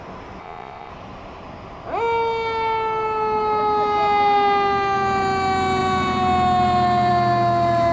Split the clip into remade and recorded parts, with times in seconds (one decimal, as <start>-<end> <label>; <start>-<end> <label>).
0.0-0.4 recorded; 0.4-0.9 remade; 0.9-7.9 recorded